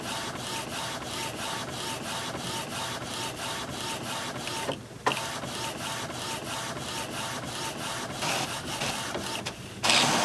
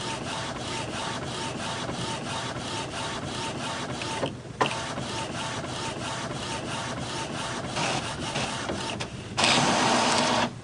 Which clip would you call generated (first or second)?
second